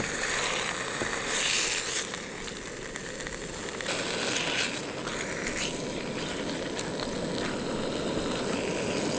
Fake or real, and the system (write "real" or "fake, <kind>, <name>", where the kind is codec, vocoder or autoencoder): real